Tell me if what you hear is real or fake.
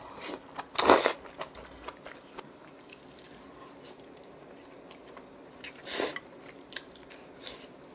real